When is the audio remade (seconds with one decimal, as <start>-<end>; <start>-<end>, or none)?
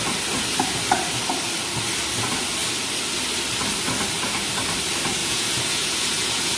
5.2-6.6